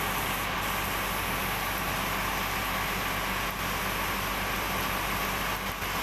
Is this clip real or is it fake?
real